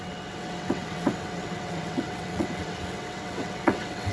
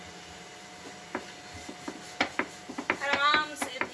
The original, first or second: second